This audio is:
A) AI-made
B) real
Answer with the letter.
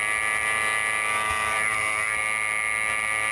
B